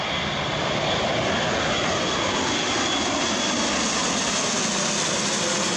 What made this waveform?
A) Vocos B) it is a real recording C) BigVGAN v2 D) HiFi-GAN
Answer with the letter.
B